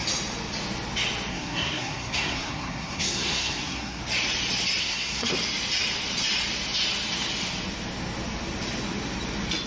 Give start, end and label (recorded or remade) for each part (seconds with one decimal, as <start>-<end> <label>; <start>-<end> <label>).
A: 0.0-1.3 recorded; 1.3-4.0 remade; 4.0-4.8 recorded; 4.8-5.3 remade; 5.3-9.7 recorded